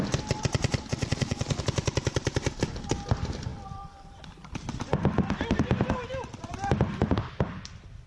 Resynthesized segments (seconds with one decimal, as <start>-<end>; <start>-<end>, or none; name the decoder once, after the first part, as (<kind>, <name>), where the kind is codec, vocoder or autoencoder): 0.9-1.6 (vocoder, Vocos)